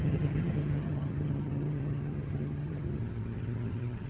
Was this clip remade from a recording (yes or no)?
yes